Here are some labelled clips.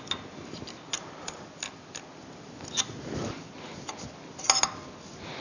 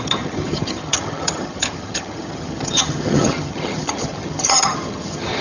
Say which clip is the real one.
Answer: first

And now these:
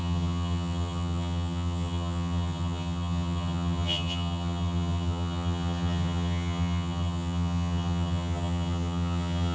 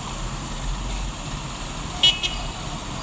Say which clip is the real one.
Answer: second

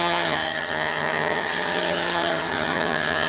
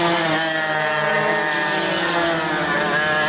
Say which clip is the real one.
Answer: second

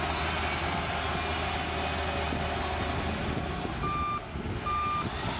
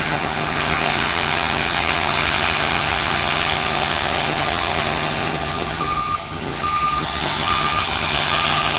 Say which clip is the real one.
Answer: first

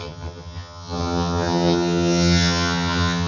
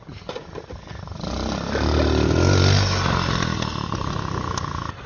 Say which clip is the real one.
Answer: second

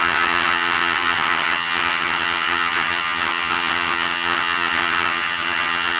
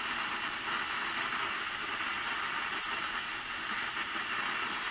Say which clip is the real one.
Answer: second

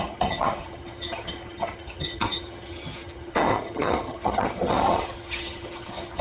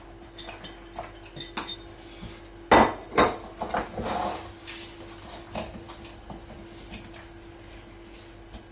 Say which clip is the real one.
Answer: second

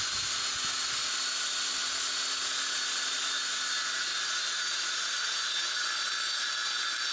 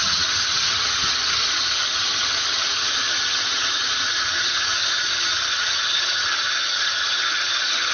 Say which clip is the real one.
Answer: first